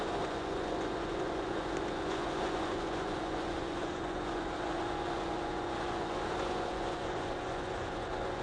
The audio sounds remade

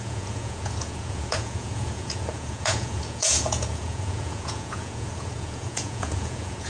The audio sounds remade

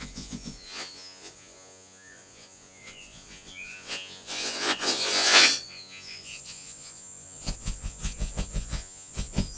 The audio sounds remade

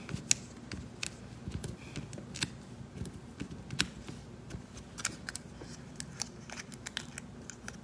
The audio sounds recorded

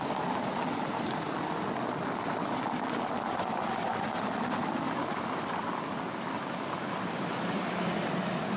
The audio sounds recorded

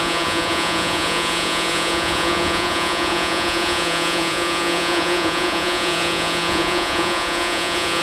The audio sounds remade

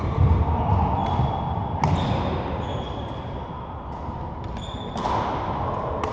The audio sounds recorded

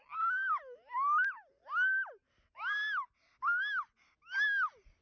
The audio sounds recorded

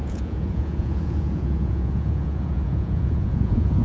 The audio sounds remade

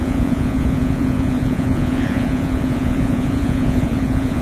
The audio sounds remade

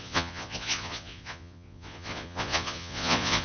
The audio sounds remade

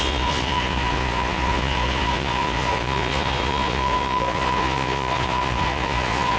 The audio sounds remade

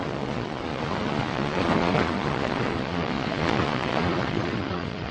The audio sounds remade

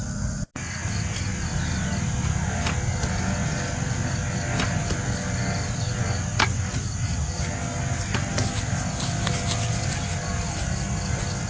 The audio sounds recorded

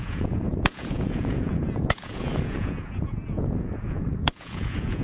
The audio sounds remade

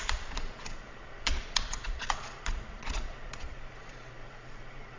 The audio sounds remade